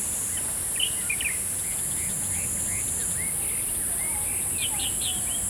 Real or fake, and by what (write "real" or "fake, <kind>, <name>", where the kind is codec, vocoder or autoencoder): real